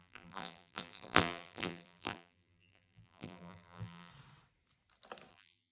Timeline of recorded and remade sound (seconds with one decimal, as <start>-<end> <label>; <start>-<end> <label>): 0.0-4.1 remade; 4.1-5.3 recorded; 5.3-5.7 remade